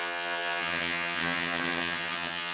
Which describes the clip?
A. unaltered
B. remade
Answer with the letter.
B